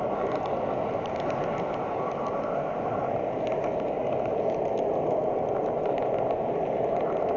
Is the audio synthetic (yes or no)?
no